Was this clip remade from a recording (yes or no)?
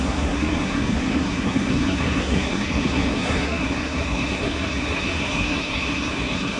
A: yes